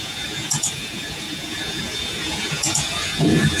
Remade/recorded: remade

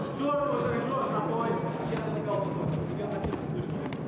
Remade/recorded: recorded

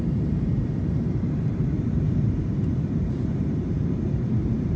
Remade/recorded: remade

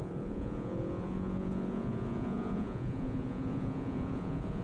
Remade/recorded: remade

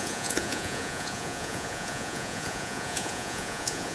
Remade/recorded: remade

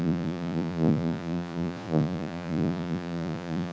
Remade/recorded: remade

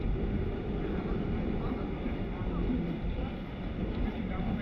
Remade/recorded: recorded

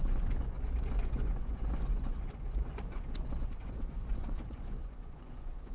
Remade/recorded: remade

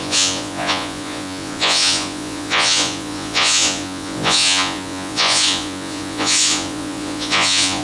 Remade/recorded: remade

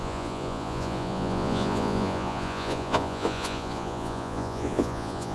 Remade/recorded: remade